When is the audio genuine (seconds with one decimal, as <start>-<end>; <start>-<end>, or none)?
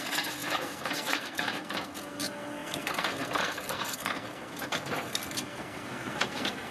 none